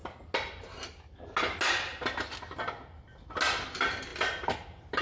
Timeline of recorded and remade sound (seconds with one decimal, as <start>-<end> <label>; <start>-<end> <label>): 0.0-5.0 recorded